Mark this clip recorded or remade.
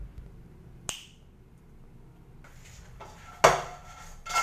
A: recorded